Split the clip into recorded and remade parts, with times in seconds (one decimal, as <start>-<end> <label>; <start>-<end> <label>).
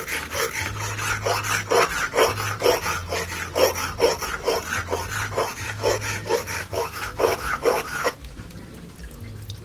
0.0-5.5 recorded; 5.5-8.5 remade; 8.5-9.6 recorded